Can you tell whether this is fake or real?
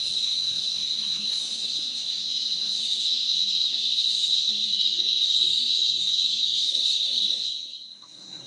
fake